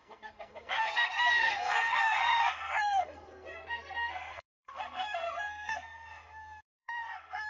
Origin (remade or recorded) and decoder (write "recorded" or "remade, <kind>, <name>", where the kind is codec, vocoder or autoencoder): remade, codec, SNAC